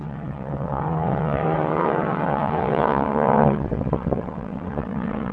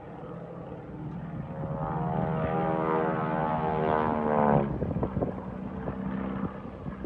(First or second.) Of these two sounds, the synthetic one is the first